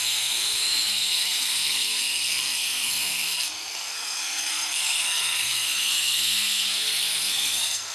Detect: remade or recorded remade